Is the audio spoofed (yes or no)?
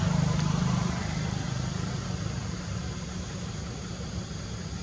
no